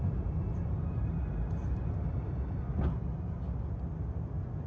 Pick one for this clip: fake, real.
real